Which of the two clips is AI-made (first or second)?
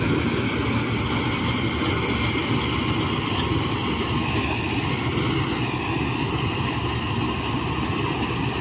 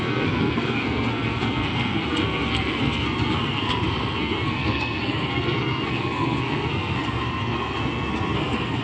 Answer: second